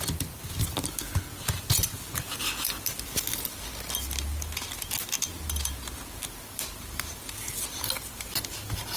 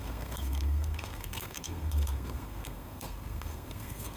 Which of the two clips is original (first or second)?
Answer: first